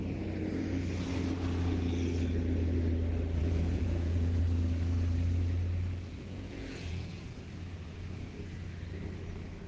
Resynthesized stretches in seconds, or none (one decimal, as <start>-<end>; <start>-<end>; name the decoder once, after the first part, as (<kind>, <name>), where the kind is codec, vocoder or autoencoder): 3.4-4.4 (vocoder, Vocos); 6.1-7.4